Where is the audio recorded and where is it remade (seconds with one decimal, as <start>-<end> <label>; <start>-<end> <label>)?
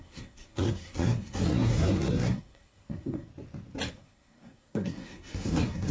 0.0-3.3 remade; 3.3-3.9 recorded; 3.9-5.9 remade